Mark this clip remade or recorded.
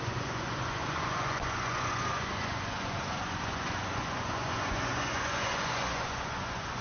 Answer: remade